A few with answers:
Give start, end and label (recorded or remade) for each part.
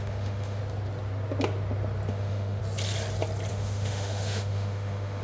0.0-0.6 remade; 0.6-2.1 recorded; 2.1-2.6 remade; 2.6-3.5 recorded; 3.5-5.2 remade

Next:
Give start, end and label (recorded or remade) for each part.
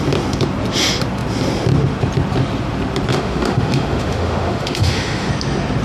0.0-3.1 recorded; 3.1-5.3 remade; 5.3-5.8 recorded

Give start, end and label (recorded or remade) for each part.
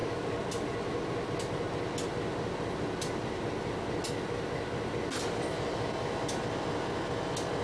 0.0-7.6 recorded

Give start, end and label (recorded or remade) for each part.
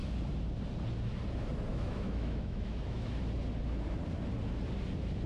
0.0-1.7 recorded; 1.7-3.2 remade; 3.2-5.3 recorded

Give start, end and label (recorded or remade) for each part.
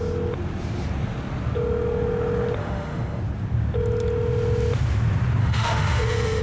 0.0-2.6 recorded; 2.6-3.2 remade; 3.2-5.4 recorded; 5.4-6.4 remade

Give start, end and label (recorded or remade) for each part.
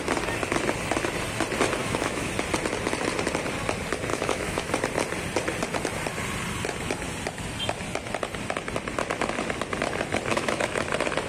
0.0-1.8 recorded; 1.8-2.3 remade; 2.3-4.1 recorded; 4.1-4.7 remade; 4.7-10.3 recorded; 10.3-10.8 remade; 10.8-11.3 recorded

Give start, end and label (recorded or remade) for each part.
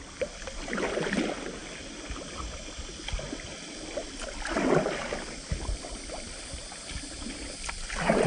0.0-8.3 recorded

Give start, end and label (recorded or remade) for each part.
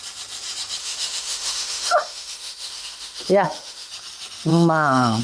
0.0-0.8 recorded; 0.8-3.9 remade; 3.9-4.5 recorded; 4.5-5.2 remade